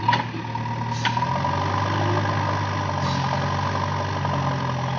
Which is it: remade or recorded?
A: recorded